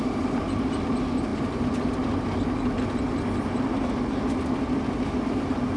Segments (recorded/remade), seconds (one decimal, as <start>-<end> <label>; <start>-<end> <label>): 0.0-5.8 recorded